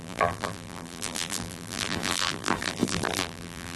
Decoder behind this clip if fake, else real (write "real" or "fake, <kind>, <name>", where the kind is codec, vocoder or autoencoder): fake, vocoder, BigVGAN v2